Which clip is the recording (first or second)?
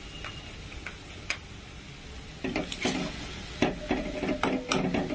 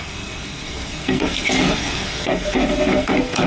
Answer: first